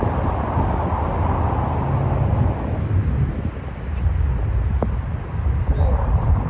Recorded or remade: recorded